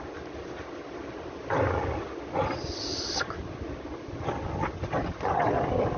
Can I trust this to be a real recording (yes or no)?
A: yes